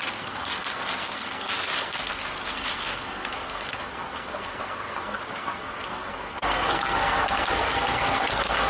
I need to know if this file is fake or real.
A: fake